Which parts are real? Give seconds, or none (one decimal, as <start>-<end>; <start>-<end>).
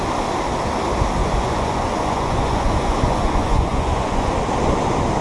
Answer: 0.0-1.2; 4.3-5.2